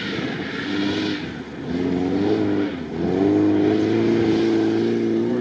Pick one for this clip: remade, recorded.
recorded